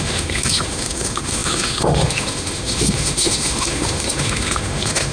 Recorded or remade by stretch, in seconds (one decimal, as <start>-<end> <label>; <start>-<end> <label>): 0.0-5.1 remade